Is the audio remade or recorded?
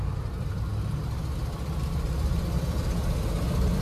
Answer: recorded